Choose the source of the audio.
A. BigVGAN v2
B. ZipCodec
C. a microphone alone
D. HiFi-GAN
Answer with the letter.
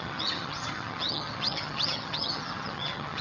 D